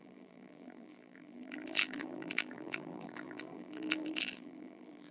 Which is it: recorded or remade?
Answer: remade